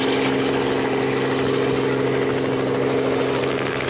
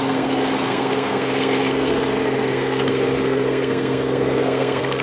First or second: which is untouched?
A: first